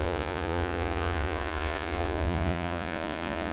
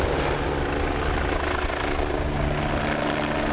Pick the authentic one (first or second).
second